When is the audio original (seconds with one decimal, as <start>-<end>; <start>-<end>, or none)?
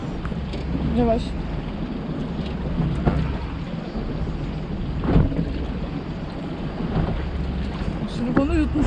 0.0-8.9